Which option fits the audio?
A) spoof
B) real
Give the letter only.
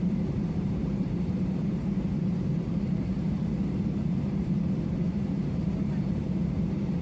A